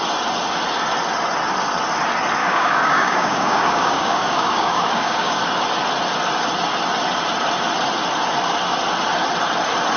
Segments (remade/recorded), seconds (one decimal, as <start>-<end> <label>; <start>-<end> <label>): 0.0-2.4 recorded; 2.4-5.4 remade; 5.4-10.0 recorded